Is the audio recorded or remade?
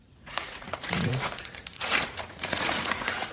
remade